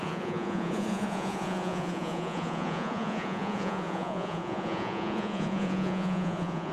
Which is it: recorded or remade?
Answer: remade